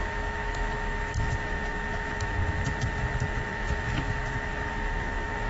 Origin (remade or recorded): remade